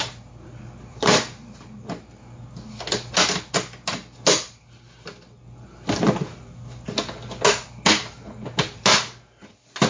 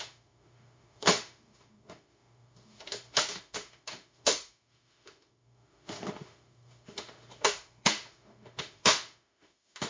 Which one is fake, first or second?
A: second